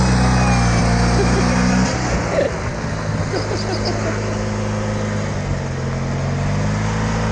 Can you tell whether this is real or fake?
real